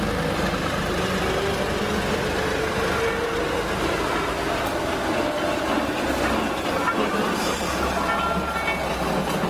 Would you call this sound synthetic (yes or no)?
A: no